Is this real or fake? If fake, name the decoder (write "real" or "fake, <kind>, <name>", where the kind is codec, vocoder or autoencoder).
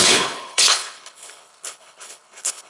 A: fake, codec, HILCodec